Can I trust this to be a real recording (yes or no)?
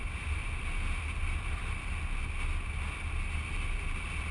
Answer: yes